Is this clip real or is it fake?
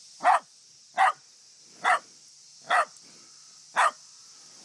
real